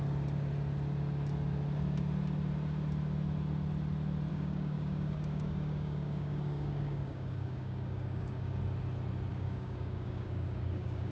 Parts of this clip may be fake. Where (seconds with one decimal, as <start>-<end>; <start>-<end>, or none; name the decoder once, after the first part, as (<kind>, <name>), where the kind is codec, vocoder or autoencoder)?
4.3-8.6 (codec, DAC); 9.3-11.1